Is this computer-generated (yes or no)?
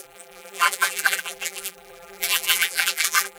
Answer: yes